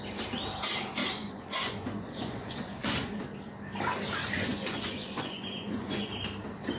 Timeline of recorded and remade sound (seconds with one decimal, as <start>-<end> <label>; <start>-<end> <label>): 0.0-1.0 recorded; 1.0-3.2 remade; 3.2-4.2 recorded; 4.2-6.1 remade; 6.1-6.8 recorded